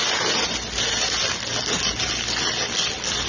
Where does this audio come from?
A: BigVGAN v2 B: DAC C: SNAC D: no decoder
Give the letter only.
D